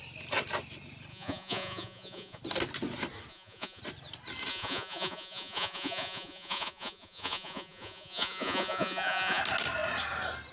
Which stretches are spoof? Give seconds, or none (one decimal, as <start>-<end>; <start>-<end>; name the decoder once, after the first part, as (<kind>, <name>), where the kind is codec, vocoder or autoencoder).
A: 1.1-2.4 (vocoder, Vocos); 3.3-3.8; 4.5-9.4